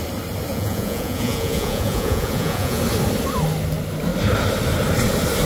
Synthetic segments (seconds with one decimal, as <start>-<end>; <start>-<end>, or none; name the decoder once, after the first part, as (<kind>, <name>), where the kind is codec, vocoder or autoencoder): 0.5-2.8 (vocoder, Vocos)